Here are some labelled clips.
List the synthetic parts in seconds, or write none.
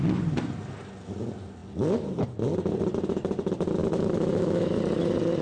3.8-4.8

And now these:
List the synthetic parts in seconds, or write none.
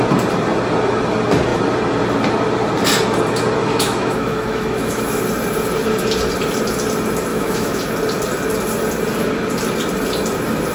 3.6-5.2; 7.3-7.8